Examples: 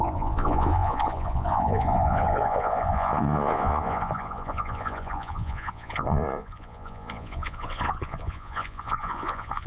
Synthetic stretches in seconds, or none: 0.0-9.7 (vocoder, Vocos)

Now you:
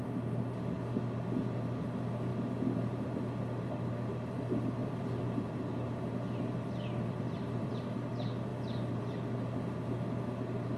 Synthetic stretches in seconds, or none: 4.8-7.7 (vocoder, BigVGAN v2)